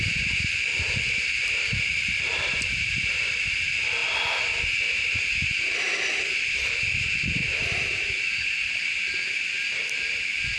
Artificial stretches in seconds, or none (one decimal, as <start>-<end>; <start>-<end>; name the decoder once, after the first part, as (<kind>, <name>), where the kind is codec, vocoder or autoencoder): 0.0-4.0 (vocoder, BigVGAN v2); 5.5-7.4; 9.7-10.6